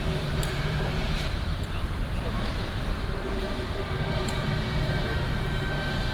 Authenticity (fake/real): fake